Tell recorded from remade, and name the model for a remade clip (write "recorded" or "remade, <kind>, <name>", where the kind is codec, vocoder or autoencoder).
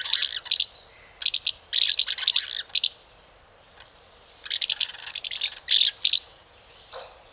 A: recorded